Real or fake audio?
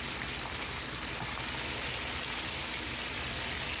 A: real